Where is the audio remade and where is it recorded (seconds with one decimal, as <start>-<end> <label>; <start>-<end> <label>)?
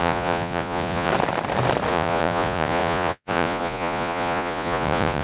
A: 0.0-1.1 remade; 1.1-1.9 recorded; 1.9-5.2 remade